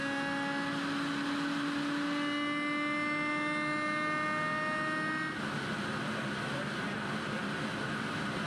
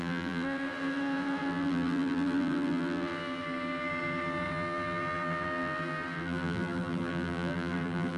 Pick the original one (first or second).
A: first